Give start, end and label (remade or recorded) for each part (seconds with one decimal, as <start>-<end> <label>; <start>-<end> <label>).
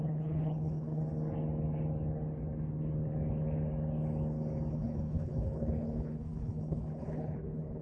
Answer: 0.0-1.0 remade; 1.0-4.7 recorded; 4.7-7.8 remade